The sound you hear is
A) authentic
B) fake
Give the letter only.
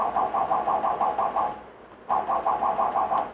A